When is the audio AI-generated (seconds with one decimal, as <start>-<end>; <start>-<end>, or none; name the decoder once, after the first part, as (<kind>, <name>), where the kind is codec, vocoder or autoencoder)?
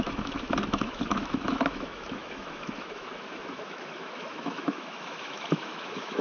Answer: 0.0-6.2 (autoencoder, DAC-VAE)